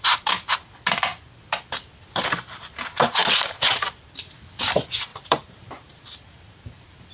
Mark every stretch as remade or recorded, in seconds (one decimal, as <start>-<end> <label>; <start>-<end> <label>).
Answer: 0.0-5.1 recorded; 5.1-7.1 remade